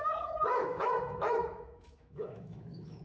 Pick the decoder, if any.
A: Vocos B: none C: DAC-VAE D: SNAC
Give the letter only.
C